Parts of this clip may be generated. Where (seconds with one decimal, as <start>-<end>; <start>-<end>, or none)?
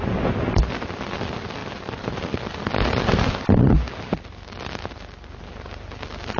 none